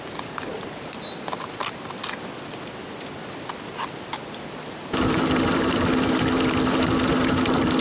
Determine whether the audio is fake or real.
real